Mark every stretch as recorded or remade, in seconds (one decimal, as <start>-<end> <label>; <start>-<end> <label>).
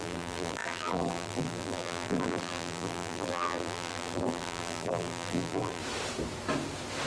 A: 0.0-5.8 remade; 5.8-7.1 recorded